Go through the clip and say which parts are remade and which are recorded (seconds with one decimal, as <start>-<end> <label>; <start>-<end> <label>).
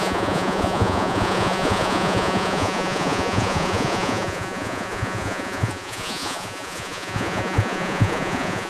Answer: 0.0-8.7 remade